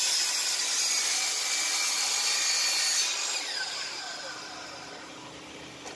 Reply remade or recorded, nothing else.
recorded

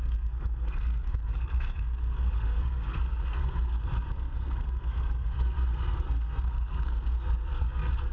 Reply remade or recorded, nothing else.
remade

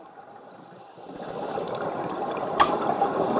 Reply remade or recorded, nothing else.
recorded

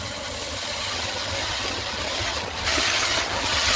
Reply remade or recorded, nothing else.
remade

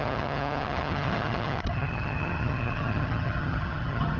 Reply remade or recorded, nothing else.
remade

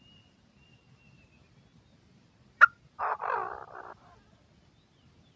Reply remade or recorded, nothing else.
recorded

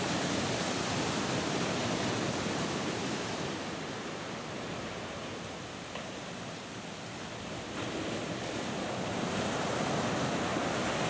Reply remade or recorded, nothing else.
recorded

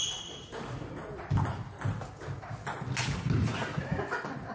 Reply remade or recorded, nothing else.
recorded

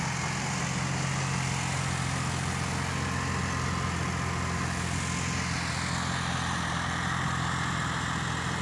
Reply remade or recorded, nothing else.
recorded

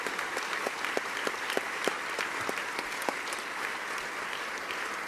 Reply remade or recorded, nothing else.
recorded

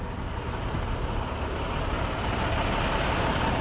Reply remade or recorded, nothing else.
recorded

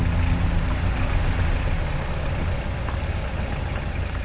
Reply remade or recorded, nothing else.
recorded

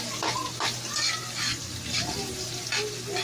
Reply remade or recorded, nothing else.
recorded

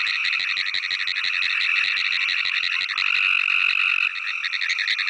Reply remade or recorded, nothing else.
recorded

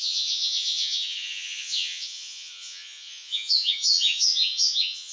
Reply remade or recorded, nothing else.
remade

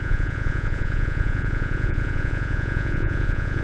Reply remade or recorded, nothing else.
remade